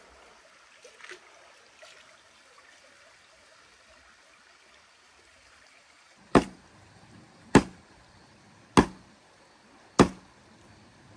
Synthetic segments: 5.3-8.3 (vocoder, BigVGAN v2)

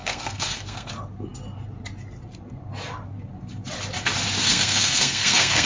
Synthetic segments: 0.0-0.9 (codec, SNAC); 4.4-5.7

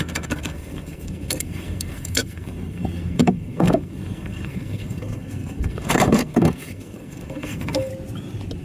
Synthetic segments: 0.0-7.9 (codec, SNAC)

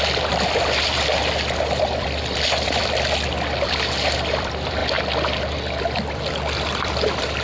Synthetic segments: 0.0-0.9 (vocoder, BigVGAN v2); 1.7-4.8; 5.8-7.4

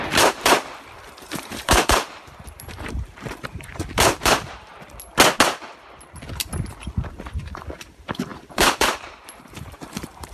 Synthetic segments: 0.0-4.7 (vocoder, BigVGAN v2); 7.1-10.3